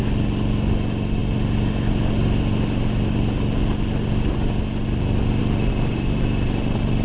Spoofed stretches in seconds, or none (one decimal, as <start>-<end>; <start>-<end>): none